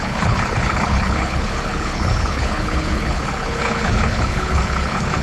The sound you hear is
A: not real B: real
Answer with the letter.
A